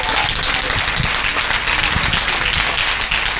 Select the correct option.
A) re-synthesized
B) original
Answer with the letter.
B